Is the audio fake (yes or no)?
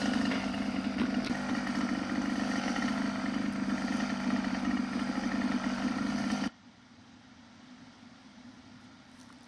no